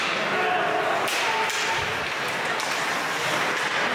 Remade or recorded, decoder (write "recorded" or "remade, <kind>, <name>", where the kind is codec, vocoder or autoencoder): recorded